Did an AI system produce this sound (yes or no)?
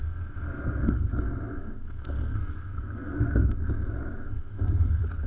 yes